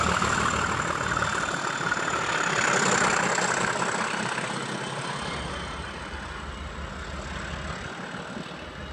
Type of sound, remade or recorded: recorded